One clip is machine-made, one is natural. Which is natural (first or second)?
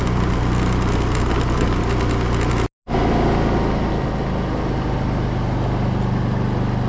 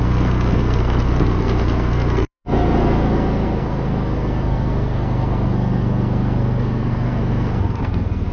first